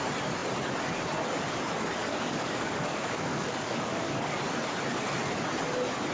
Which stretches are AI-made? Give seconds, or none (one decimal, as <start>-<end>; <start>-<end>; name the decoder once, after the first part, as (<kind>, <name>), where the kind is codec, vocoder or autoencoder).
2.1-4.4 (codec, DAC)